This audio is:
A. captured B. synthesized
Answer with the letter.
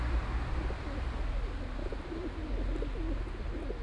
A